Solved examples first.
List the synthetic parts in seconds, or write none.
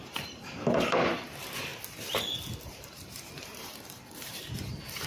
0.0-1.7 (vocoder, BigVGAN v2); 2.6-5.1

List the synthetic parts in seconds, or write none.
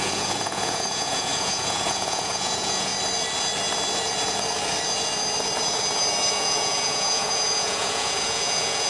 0.0-2.9 (vocoder, Vocos); 6.3-8.9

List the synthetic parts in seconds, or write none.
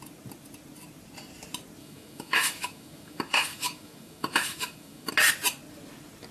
1.8-5.1 (autoencoder, DAC-VAE)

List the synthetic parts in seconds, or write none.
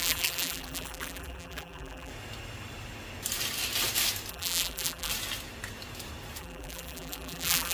0.0-2.1 (vocoder, BigVGAN v2); 4.3-5.1; 6.4-7.7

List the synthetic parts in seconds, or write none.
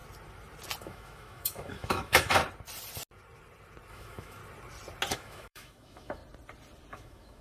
0.8-2.4 (autoencoder, DAC-VAE); 3.9-4.4; 5.1-6.2; 6.9-7.4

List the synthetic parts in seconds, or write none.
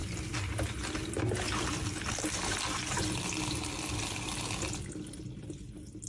none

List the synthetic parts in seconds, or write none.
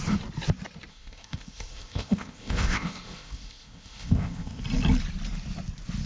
0.9-4.6 (codec, ZipCodec)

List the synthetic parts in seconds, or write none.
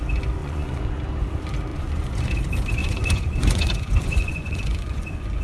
0.4-0.9 (vocoder, Vocos); 1.7-2.3; 2.8-5.4